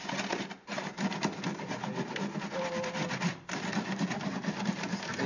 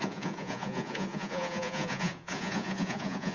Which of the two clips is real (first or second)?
first